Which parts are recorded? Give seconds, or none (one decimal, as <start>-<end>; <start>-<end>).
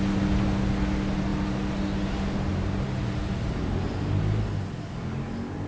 0.0-5.7